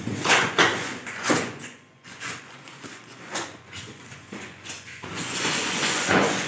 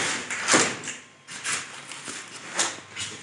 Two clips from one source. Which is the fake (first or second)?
first